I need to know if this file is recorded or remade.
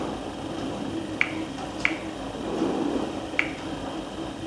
recorded